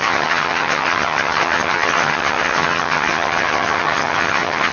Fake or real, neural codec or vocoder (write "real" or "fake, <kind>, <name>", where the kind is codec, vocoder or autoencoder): fake, vocoder, HiFi-GAN